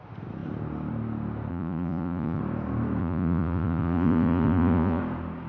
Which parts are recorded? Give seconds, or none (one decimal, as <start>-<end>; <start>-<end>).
0.0-1.5; 2.4-3.0; 5.0-5.5